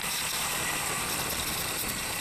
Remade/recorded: remade